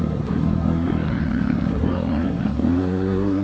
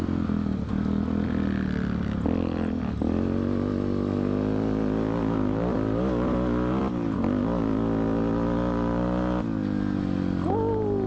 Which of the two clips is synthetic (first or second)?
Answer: first